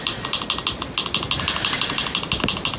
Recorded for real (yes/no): yes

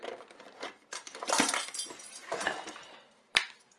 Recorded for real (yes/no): no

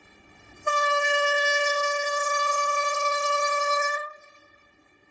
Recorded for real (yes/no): no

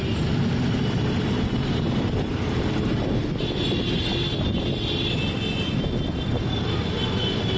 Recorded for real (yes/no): yes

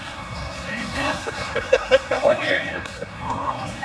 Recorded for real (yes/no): no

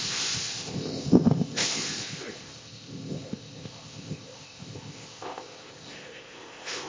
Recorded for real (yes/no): no